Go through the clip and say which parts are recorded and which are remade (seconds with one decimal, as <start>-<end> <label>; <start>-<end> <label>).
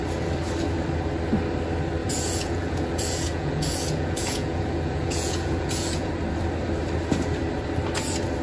0.0-2.0 recorded; 2.0-6.1 remade; 6.1-8.4 recorded